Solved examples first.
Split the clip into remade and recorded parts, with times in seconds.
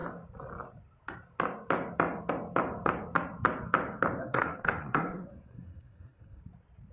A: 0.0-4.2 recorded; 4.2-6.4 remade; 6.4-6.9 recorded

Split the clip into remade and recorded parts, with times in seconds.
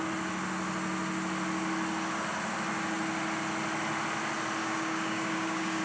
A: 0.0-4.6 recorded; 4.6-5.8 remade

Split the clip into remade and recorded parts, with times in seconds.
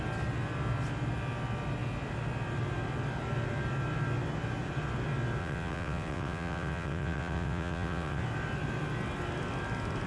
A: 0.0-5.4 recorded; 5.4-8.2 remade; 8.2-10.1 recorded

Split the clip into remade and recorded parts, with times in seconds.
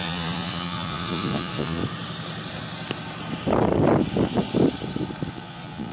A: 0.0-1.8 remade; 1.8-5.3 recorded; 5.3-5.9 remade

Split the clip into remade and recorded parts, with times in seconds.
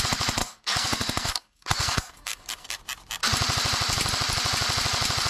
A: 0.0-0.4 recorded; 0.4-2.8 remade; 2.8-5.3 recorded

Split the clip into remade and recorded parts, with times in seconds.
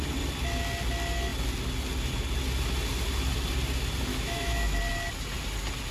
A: 0.0-4.1 recorded; 4.1-4.8 remade; 4.8-5.9 recorded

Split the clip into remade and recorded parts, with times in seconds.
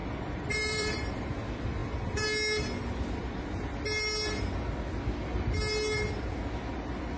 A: 0.0-1.3 remade; 1.3-7.2 recorded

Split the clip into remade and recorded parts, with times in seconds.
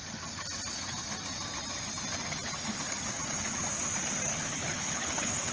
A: 0.0-4.3 recorded; 4.3-5.5 remade